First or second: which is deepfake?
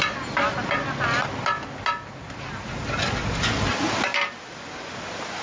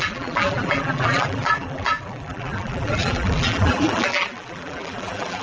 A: second